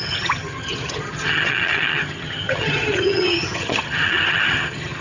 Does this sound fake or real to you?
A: fake